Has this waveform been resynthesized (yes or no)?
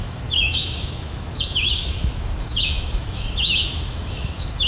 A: yes